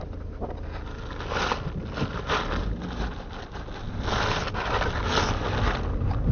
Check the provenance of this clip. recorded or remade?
recorded